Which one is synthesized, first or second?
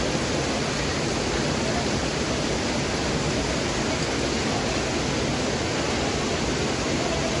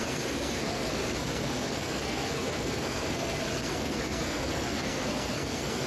second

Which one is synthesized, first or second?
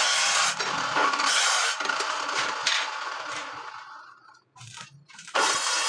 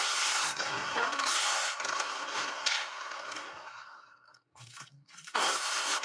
second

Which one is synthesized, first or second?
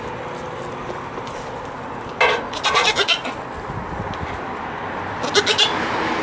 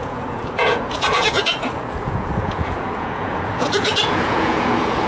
second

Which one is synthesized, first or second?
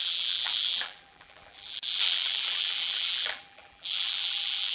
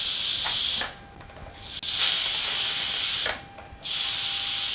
first